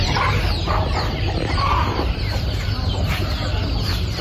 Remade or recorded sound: remade